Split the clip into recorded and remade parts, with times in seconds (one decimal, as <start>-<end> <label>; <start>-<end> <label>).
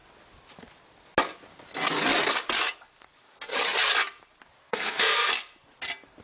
0.0-4.6 recorded; 4.6-5.3 remade; 5.3-6.2 recorded